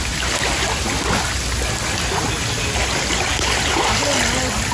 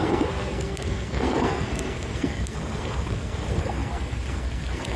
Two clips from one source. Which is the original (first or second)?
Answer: first